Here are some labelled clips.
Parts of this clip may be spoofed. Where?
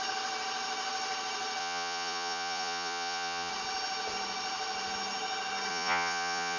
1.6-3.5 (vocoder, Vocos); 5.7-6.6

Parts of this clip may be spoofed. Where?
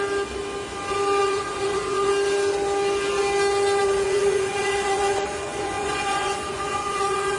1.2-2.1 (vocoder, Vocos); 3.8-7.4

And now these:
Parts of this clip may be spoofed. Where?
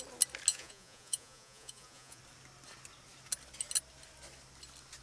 0.5-2.2 (vocoder, Vocos)